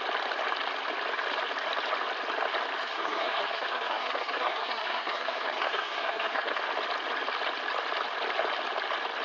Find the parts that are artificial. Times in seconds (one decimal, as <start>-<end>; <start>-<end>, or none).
2.8-6.6